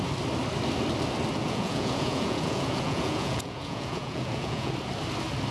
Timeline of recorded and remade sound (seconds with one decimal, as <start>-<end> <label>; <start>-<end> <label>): 0.0-1.4 recorded; 1.4-4.7 remade; 4.7-5.5 recorded